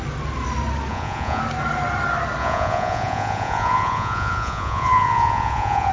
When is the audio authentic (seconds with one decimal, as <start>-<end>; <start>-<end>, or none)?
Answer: 0.0-0.9; 1.4-2.4